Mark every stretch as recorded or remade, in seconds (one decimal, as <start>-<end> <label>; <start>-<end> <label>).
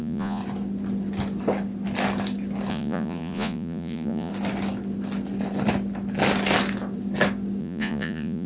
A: 0.0-0.4 remade; 0.4-2.7 recorded; 2.7-4.3 remade; 4.3-7.6 recorded; 7.6-8.5 remade